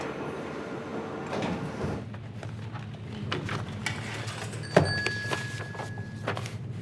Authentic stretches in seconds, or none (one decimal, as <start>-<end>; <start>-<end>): 0.0-6.8